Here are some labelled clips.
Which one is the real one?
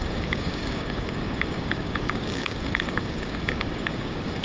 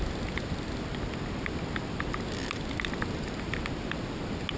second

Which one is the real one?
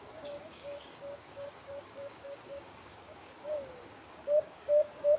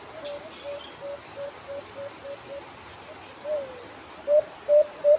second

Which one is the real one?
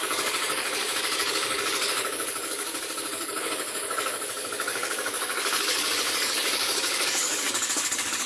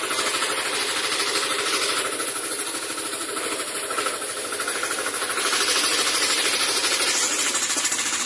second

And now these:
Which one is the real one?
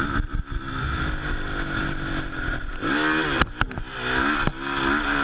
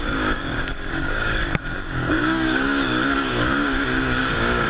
first